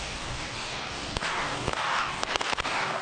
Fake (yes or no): yes